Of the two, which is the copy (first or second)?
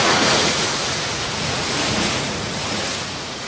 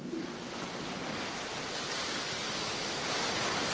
first